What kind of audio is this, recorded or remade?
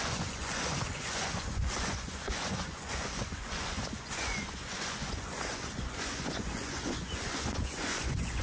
remade